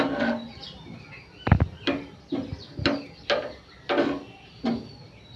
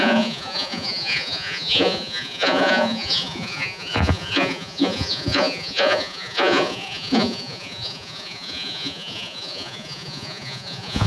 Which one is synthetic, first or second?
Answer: second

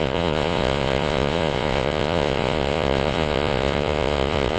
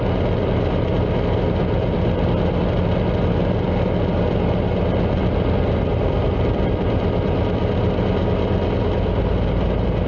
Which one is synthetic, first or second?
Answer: first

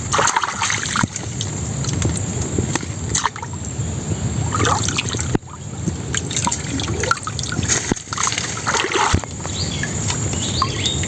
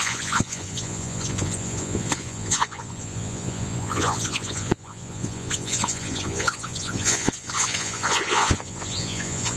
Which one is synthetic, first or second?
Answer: second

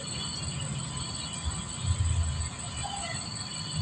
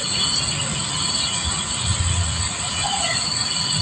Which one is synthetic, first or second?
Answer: second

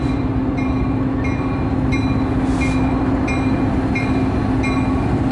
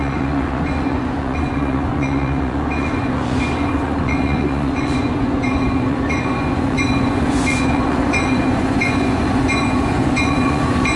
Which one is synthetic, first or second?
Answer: second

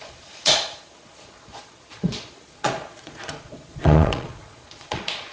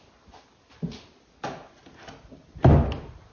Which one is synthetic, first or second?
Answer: first